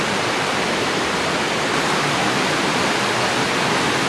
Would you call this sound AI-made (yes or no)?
no